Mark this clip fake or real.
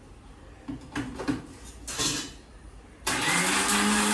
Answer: real